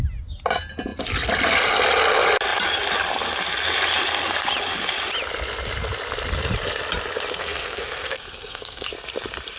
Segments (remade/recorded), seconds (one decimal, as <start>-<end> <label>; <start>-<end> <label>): 0.0-7.4 recorded; 7.4-8.9 remade; 8.9-9.6 recorded